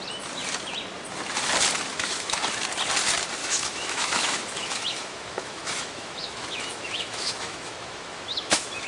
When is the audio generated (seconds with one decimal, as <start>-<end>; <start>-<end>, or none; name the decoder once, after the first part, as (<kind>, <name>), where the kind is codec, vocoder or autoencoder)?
1.9-2.4 (autoencoder, DAC-VAE); 3.4-8.9